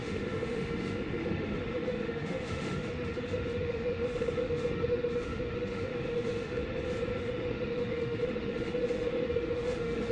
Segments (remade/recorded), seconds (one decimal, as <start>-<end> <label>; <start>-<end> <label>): 0.0-6.6 remade; 6.6-7.2 recorded; 7.2-10.1 remade